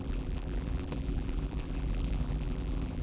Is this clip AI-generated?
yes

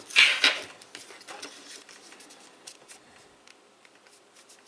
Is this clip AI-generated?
no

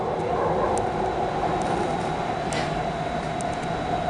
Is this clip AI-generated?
no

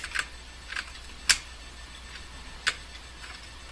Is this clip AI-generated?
no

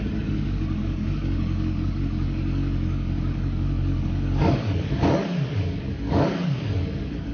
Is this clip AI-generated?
yes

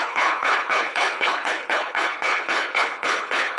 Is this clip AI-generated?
yes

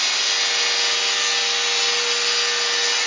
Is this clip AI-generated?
no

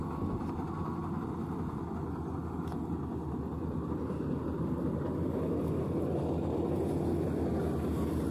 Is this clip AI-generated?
no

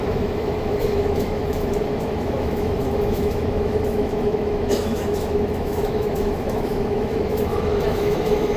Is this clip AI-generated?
yes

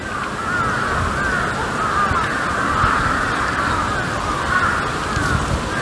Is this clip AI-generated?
no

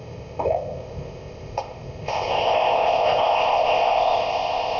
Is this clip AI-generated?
yes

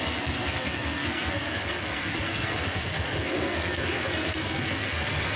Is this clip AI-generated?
yes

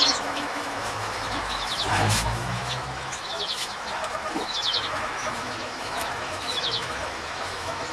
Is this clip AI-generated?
yes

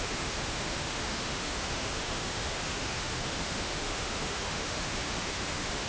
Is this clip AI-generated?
yes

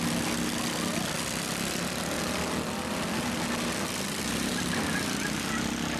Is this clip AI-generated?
no